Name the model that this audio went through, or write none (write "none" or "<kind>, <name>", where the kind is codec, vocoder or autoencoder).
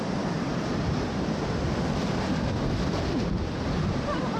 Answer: none